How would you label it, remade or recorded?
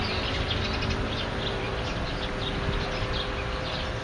recorded